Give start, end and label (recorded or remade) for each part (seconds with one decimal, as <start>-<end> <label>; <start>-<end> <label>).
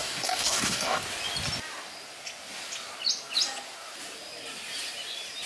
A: 0.0-1.0 remade; 1.0-5.5 recorded